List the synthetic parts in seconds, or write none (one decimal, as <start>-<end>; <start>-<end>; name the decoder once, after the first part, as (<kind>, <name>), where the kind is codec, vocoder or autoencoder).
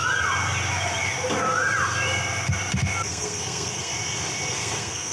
3.1-3.9 (codec, SNAC); 4.5-5.1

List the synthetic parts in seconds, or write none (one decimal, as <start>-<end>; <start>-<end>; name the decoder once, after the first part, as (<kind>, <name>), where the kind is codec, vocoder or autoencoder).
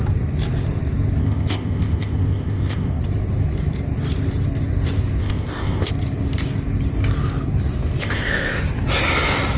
1.2-3.0 (codec, ZipCodec); 5.2-5.9; 8.0-8.6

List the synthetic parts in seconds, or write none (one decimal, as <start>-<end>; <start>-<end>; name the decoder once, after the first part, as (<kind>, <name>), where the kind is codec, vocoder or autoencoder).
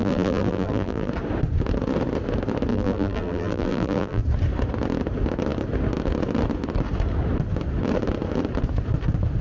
0.0-1.1 (vocoder, BigVGAN v2); 2.7-4.2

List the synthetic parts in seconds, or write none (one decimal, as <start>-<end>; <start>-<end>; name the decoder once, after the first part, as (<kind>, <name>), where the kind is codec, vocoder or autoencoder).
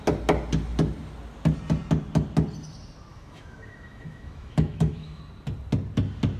3.1-5.2 (autoencoder, DAC-VAE)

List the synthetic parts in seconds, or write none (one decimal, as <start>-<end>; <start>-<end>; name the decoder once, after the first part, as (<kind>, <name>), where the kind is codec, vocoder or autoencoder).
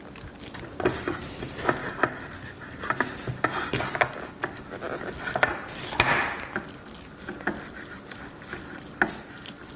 none